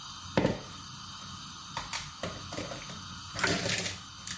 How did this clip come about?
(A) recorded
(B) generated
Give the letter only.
A